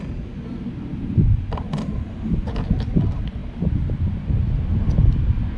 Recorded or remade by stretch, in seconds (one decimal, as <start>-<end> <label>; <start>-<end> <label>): 0.0-0.9 recorded; 0.9-2.9 remade; 2.9-3.4 recorded; 3.4-4.2 remade; 4.2-5.6 recorded